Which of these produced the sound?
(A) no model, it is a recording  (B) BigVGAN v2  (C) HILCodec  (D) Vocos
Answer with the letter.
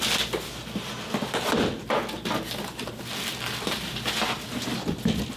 A